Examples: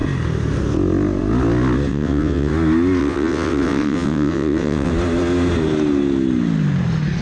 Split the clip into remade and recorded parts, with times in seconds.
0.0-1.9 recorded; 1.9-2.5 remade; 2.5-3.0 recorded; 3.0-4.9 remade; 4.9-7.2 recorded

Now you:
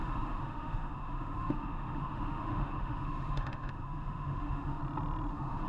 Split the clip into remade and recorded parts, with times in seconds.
0.0-4.8 remade; 4.8-5.3 recorded; 5.3-5.7 remade

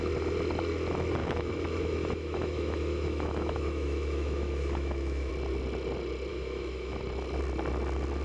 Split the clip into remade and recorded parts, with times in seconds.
0.0-1.2 recorded; 1.2-5.3 remade; 5.3-6.3 recorded; 6.3-7.0 remade; 7.0-8.2 recorded